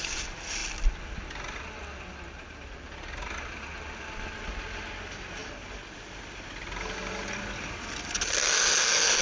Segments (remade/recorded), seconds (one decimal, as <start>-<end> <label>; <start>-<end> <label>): 0.0-9.2 recorded